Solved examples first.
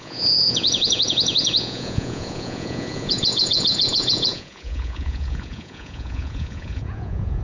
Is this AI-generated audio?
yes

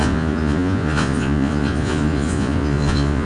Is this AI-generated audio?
yes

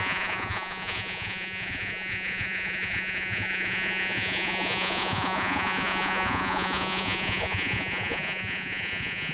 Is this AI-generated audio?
yes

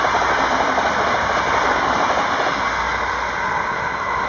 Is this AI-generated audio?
no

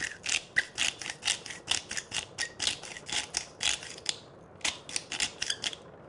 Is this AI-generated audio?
no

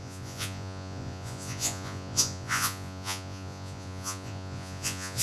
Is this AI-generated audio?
yes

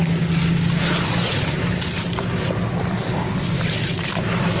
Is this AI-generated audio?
no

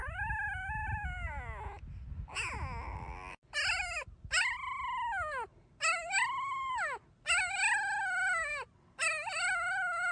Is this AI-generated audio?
no